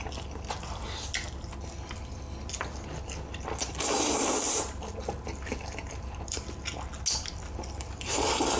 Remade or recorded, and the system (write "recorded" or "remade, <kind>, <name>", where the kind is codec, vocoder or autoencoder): recorded